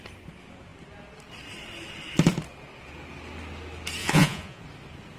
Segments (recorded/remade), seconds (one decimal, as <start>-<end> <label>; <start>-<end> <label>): 0.0-4.0 recorded; 4.0-4.6 remade; 4.6-5.2 recorded